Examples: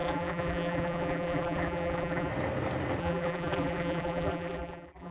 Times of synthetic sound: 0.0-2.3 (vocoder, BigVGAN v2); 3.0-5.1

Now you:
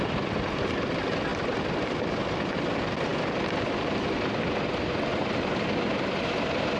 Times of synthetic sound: 5.1-6.8 (vocoder, BigVGAN v2)

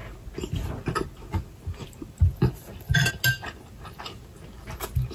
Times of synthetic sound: none